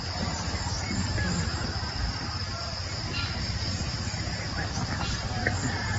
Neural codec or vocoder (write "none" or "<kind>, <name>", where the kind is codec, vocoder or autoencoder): none